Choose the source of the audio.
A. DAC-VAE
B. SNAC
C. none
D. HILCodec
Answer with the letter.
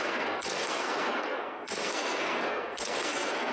B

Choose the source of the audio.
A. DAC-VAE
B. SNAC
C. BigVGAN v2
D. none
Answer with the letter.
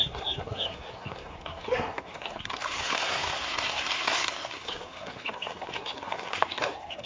B